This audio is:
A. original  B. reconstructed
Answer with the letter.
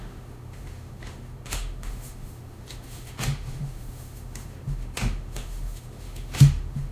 B